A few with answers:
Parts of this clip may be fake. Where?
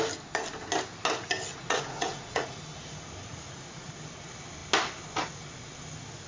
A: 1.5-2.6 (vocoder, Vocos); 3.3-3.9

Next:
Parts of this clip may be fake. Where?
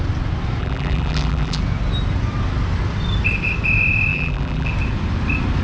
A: 0.6-1.6 (vocoder, BigVGAN v2); 4.1-4.7